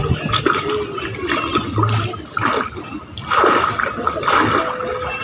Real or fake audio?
real